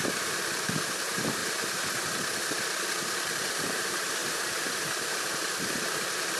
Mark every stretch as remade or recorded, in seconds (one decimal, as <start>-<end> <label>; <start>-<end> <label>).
0.0-1.4 remade; 1.4-3.5 recorded; 3.5-6.4 remade